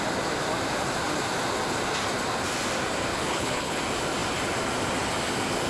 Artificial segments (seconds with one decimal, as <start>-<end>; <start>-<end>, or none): 3.1-3.8